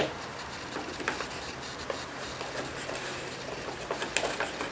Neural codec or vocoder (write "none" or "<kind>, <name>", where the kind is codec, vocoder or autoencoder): none